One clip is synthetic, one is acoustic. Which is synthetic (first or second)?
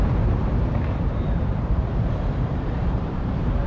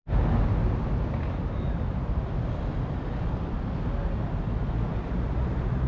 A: first